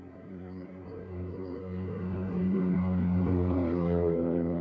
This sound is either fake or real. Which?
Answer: fake